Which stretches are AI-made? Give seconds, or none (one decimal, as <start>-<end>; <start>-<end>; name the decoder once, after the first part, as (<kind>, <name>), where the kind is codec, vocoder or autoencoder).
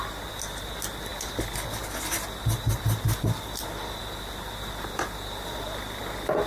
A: none